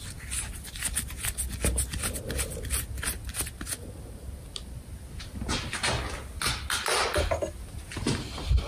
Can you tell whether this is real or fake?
real